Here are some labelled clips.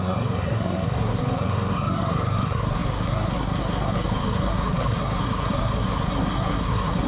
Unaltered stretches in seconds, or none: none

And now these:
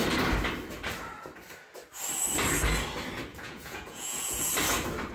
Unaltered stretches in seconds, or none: 0.0-3.3; 4.5-5.1

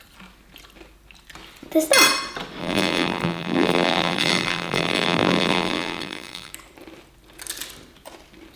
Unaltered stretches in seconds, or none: 0.0-2.6; 6.5-8.6

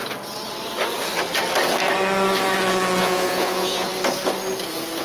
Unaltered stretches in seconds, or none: 0.0-3.0; 3.9-5.0

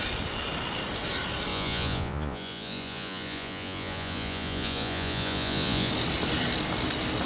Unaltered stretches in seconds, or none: 0.0-1.5; 5.9-7.3